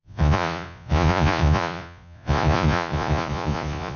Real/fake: fake